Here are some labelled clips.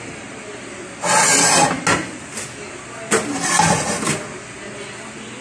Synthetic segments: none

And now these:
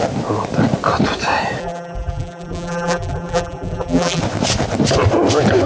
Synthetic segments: 1.6-4.2

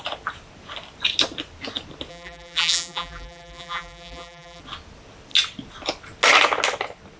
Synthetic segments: 2.1-4.6